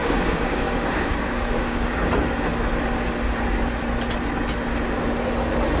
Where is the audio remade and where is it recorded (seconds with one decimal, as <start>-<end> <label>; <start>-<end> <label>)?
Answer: 0.0-2.1 remade; 2.1-5.8 recorded